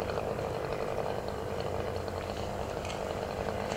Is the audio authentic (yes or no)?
no